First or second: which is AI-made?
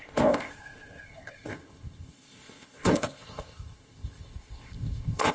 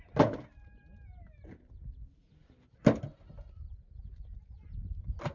first